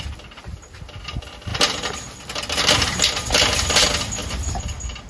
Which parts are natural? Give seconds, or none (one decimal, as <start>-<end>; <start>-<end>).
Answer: 0.0-5.1